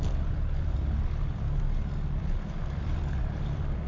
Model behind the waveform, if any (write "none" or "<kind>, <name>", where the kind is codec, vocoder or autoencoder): vocoder, BigVGAN v2